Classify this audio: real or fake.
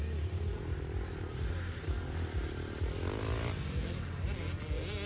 real